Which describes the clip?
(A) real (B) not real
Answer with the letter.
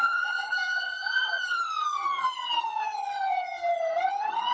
B